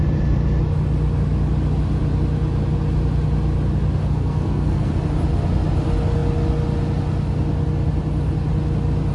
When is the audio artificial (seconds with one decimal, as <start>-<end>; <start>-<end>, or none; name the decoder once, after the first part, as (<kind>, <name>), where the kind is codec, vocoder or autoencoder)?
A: 4.0-4.9 (codec, SNAC)